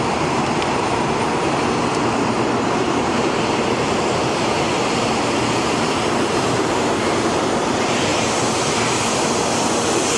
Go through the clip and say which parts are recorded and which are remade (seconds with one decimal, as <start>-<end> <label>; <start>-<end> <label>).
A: 0.0-10.2 remade